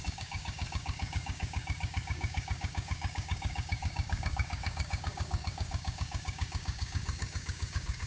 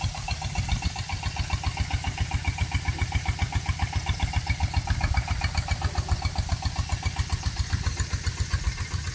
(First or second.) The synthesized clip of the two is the first